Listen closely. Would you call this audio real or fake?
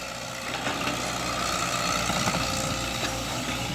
real